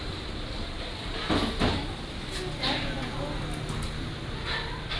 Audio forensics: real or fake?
real